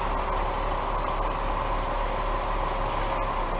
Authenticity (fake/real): real